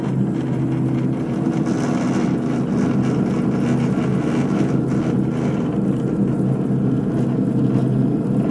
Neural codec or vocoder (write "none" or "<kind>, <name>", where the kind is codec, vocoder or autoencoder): none